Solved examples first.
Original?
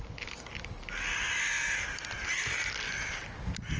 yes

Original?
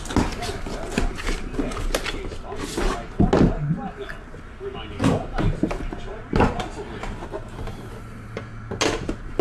yes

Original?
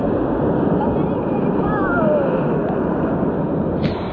yes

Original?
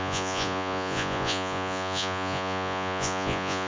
no